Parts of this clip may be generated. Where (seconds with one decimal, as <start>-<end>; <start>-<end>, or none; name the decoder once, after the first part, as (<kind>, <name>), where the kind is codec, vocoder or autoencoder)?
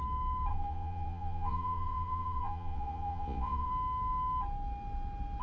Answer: 0.5-3.7 (vocoder, Vocos)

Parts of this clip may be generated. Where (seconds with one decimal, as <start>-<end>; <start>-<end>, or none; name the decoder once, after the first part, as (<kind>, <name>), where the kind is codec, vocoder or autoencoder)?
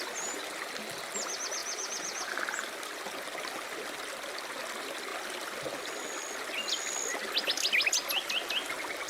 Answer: 1.6-2.3 (vocoder, Vocos)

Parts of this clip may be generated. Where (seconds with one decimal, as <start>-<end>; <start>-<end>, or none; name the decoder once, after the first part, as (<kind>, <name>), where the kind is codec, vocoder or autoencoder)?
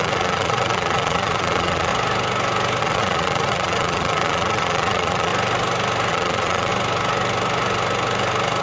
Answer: 0.0-1.9 (vocoder, Vocos); 2.8-5.3; 6.1-6.7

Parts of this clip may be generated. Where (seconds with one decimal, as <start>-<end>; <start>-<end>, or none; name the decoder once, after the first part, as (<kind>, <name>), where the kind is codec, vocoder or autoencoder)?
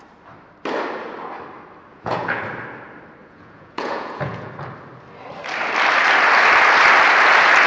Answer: 1.9-2.4 (vocoder, Vocos); 3.2-4.5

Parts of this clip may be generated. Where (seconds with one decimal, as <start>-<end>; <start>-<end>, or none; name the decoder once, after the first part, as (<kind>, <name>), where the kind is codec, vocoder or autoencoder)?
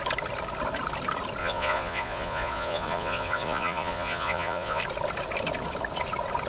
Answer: 1.4-4.8 (vocoder, Vocos)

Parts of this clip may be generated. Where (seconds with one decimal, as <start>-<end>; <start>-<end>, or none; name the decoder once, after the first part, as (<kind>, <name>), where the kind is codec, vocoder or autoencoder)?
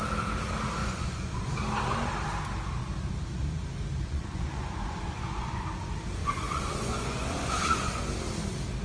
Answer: 0.8-1.5 (vocoder, Vocos); 4.1-5.6; 6.2-8.0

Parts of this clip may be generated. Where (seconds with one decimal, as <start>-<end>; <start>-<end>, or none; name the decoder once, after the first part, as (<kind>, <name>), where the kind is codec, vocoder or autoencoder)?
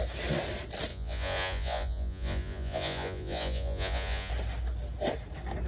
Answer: 0.9-4.3 (vocoder, Vocos)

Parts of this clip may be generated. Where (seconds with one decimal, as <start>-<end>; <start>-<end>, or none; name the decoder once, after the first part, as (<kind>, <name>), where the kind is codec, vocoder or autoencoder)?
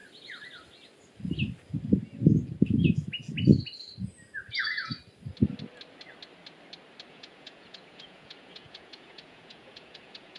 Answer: 4.6-5.0 (vocoder, Vocos); 7.1-10.4